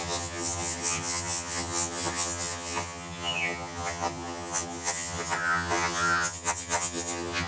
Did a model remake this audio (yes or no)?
yes